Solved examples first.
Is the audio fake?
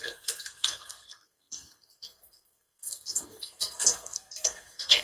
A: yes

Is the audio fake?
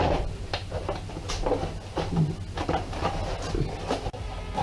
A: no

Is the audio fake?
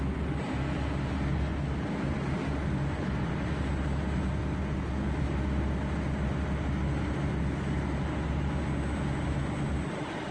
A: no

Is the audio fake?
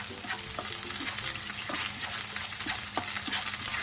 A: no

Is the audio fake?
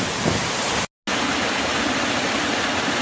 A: no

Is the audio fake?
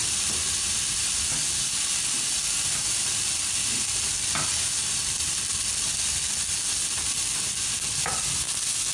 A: no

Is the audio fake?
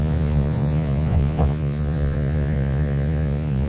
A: yes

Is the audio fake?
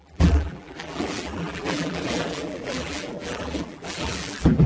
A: yes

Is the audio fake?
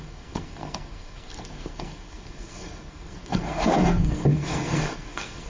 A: yes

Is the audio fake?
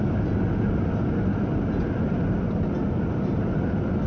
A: no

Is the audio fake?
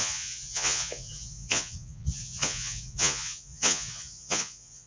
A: yes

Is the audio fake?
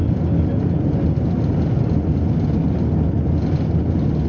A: no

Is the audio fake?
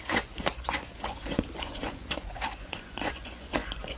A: yes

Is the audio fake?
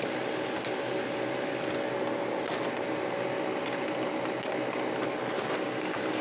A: no